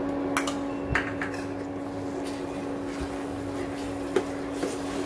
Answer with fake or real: real